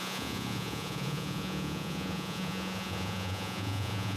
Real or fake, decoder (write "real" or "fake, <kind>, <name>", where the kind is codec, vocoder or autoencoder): fake, vocoder, Vocos